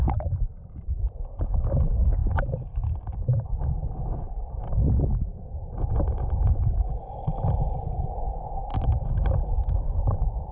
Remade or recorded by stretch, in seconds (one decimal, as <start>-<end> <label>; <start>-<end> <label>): 0.0-2.2 remade; 2.2-3.0 recorded; 3.0-10.5 remade